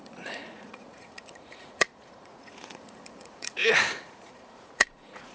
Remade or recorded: remade